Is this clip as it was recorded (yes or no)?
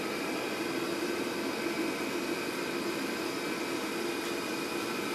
yes